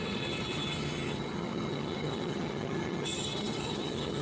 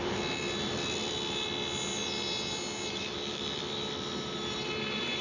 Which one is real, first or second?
second